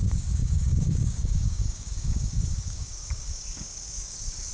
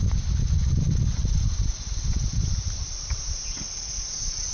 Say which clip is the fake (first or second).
first